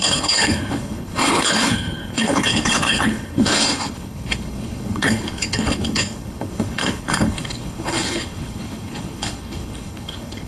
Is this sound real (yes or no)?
no